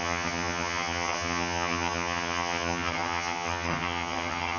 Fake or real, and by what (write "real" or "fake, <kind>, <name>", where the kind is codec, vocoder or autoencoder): fake, vocoder, HiFi-GAN